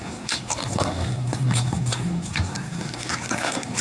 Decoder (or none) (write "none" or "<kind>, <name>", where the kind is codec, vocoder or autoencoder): codec, SNAC